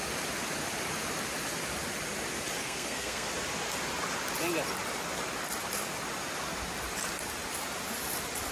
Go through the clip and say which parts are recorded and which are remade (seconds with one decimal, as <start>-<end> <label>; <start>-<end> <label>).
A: 0.0-2.6 recorded; 2.6-3.3 remade; 3.3-8.5 recorded